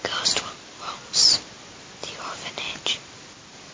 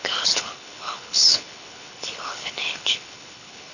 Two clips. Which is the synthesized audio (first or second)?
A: second